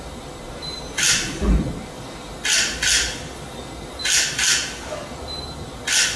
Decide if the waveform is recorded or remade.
recorded